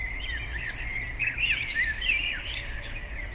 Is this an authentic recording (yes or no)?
no